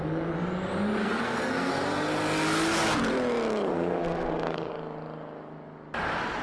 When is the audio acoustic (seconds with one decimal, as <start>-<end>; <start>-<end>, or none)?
0.0-1.0; 1.7-3.7; 4.7-6.4